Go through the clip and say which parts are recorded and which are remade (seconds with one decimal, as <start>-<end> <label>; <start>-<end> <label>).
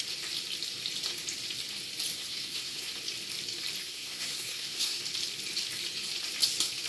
0.0-2.1 recorded; 2.1-2.9 remade; 2.9-3.8 recorded; 3.8-5.0 remade; 5.0-6.9 recorded